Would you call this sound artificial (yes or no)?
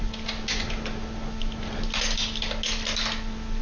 no